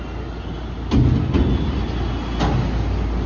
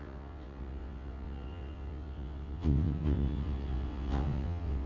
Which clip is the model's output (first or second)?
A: second